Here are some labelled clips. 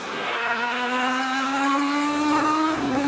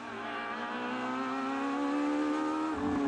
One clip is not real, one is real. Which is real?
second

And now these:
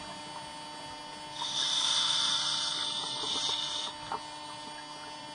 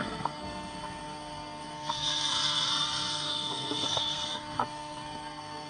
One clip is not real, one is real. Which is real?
first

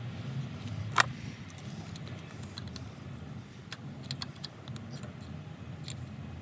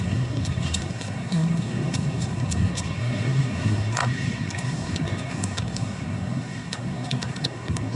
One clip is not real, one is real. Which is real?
first